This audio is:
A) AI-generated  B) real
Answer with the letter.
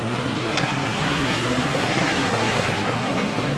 A